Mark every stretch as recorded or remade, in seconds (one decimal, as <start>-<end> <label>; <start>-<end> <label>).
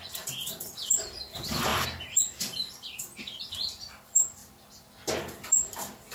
0.0-4.4 remade; 4.4-5.2 recorded; 5.2-6.1 remade